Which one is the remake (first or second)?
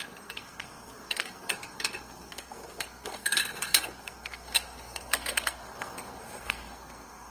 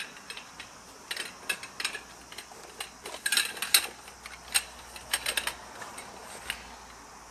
first